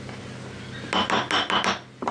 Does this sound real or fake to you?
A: real